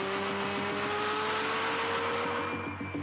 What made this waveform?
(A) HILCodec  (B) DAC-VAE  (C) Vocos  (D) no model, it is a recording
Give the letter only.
D